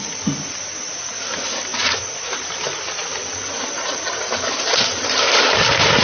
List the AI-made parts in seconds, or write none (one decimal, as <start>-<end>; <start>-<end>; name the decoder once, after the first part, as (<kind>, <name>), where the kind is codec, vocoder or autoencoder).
none